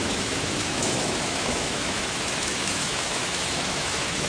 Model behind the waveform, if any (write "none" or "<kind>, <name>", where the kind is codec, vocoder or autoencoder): autoencoder, DAC-VAE